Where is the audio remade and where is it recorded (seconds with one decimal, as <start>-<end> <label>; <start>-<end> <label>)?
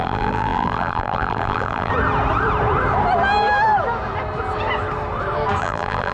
0.0-1.9 remade; 1.9-5.6 recorded; 5.6-6.1 remade